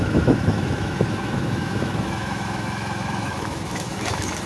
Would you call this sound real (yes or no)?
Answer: no